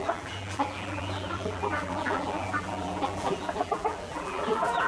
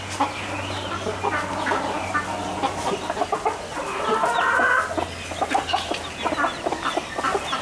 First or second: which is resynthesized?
first